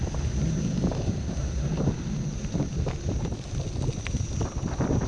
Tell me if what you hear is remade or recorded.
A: recorded